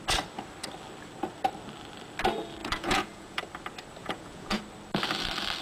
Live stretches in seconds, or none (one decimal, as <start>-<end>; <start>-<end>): 0.0-2.6; 3.4-4.0; 4.6-5.6